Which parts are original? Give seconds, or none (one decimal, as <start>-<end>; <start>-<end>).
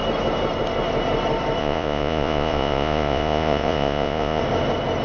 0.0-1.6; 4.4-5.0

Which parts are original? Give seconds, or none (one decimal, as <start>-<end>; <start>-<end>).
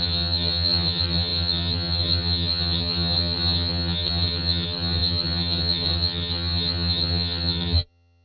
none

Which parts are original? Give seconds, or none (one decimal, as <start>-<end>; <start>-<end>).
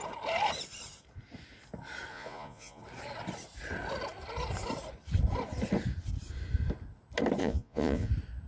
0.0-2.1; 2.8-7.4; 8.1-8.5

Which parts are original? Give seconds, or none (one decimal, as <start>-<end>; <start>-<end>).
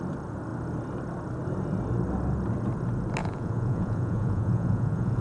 0.0-3.2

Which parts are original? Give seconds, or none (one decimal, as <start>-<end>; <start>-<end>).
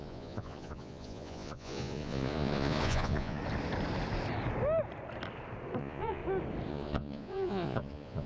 3.4-5.8; 6.2-6.7